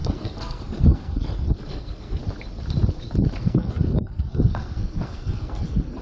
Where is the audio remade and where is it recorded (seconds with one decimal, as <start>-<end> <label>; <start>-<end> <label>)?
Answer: 0.0-2.2 remade; 2.2-3.4 recorded; 3.4-6.0 remade